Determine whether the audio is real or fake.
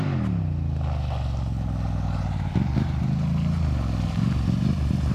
real